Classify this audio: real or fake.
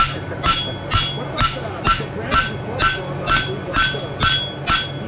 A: real